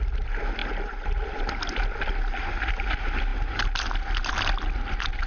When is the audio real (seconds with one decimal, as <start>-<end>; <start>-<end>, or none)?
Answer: 0.0-5.3